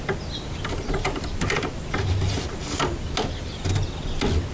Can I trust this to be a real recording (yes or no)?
yes